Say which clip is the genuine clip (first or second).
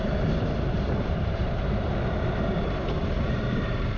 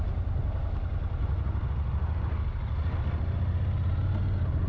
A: second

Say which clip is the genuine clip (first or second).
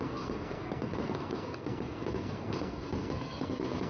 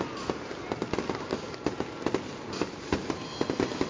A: second